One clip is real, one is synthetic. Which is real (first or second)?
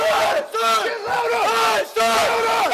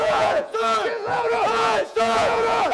first